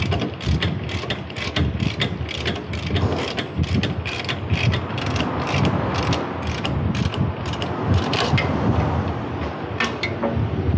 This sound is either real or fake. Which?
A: real